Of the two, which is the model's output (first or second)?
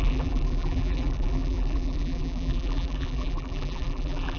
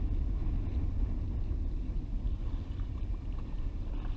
first